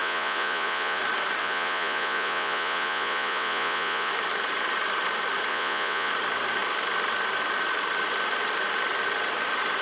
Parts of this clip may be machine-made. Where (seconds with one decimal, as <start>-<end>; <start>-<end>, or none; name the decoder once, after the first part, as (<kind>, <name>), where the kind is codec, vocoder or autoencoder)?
0.0-1.0 (vocoder, Vocos); 1.4-4.1; 5.5-6.1